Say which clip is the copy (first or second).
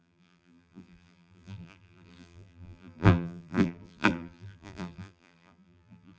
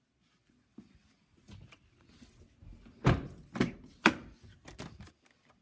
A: first